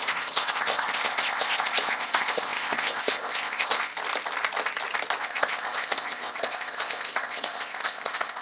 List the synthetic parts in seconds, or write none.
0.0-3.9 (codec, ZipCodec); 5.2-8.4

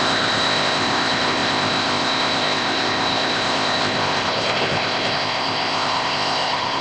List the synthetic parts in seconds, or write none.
0.0-6.8 (codec, ZipCodec)

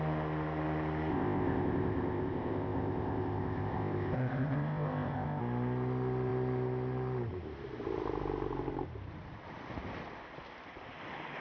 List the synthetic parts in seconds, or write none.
1.1-5.4 (codec, ZipCodec)

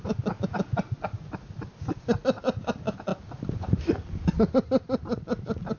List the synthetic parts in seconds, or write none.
none

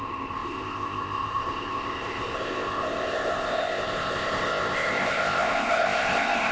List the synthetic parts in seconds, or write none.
0.0-6.5 (codec, ZipCodec)

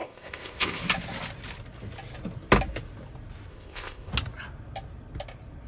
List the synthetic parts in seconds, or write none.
0.0-0.8 (codec, ZipCodec); 3.5-4.1

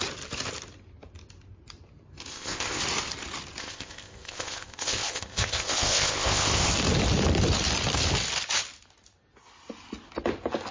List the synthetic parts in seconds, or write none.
2.3-2.8 (codec, ZipCodec); 3.6-6.7